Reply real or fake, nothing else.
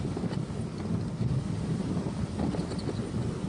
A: real